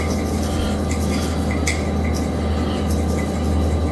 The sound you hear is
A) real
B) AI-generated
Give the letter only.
A